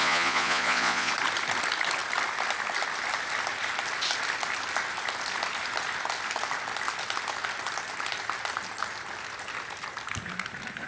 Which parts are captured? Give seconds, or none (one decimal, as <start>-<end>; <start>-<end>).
1.1-10.9